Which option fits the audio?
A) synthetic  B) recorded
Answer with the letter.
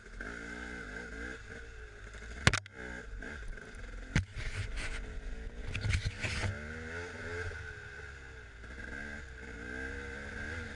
B